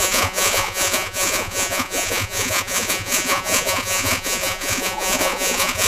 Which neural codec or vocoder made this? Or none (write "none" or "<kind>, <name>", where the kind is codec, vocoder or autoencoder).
vocoder, Vocos